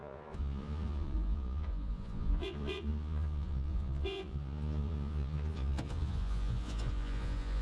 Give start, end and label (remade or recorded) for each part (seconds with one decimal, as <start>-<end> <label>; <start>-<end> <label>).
0.0-7.6 remade